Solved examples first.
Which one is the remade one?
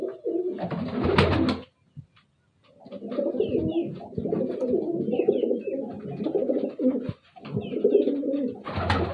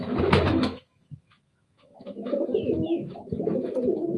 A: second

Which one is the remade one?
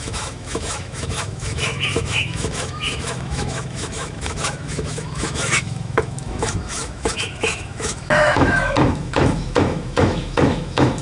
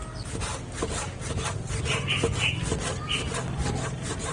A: first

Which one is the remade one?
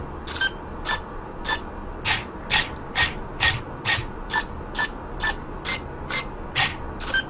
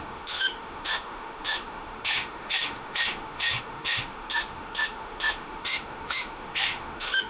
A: second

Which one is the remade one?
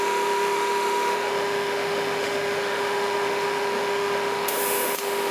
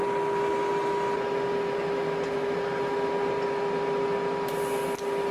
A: first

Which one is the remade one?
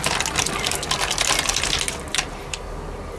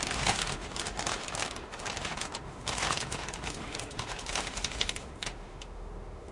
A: second